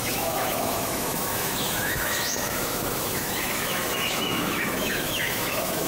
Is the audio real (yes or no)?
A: no